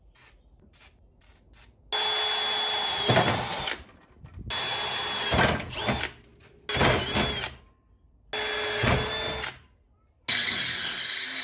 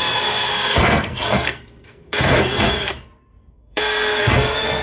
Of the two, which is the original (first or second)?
first